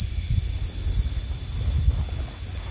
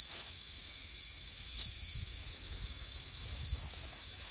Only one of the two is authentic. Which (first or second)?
first